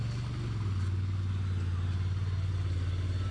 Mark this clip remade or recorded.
recorded